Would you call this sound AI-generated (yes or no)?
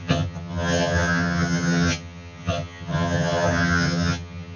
yes